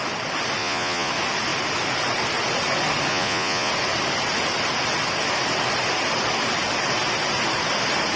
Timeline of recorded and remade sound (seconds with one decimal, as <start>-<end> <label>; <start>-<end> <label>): 0.0-0.6 recorded; 0.6-1.1 remade; 1.1-3.1 recorded; 3.1-3.7 remade; 3.7-8.2 recorded